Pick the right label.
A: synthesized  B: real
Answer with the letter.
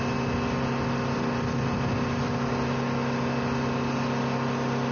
B